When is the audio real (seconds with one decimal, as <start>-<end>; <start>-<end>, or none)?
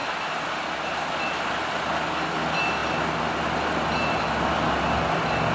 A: 0.0-5.5